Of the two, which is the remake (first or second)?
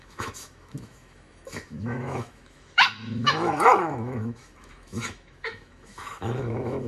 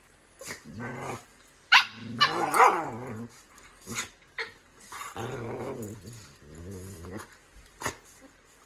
first